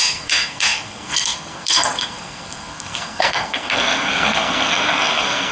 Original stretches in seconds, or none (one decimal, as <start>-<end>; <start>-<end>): none